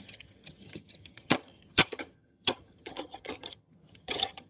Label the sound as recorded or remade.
remade